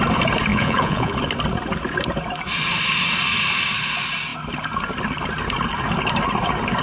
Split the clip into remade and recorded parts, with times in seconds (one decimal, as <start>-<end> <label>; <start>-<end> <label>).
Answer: 0.0-0.5 recorded; 0.5-1.1 remade; 1.1-6.8 recorded